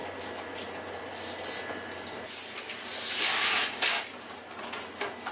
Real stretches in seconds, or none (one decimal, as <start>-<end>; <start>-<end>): 0.0-5.3